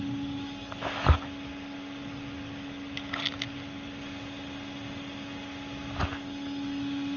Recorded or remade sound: recorded